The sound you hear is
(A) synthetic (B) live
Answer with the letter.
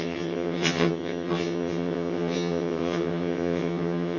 A